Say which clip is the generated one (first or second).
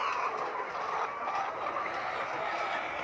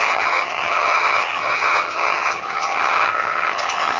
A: second